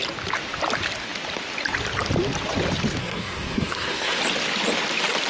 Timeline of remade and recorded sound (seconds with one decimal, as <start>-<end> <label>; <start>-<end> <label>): 0.0-3.0 recorded; 3.0-4.2 remade; 4.2-5.3 recorded